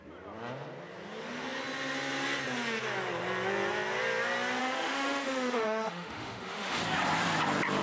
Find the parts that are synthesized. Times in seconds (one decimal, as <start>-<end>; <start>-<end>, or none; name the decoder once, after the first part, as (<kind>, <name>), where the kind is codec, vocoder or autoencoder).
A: 4.6-6.8 (autoencoder, DAC-VAE)